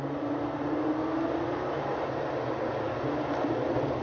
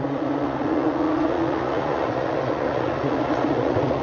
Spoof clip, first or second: second